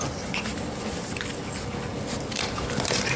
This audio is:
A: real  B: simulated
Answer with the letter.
A